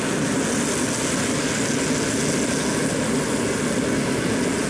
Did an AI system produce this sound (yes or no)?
no